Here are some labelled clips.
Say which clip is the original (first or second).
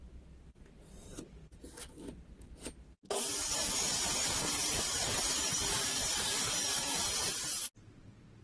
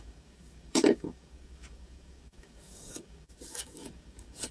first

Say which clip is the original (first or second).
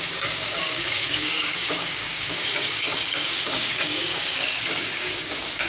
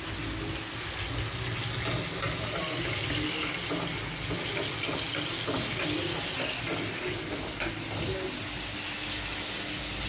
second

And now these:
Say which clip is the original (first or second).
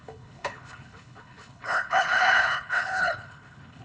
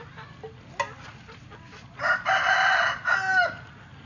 second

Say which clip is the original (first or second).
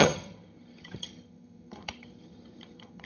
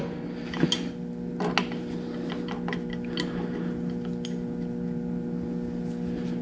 second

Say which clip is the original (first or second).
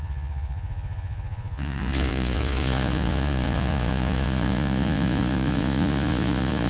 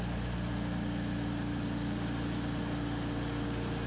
second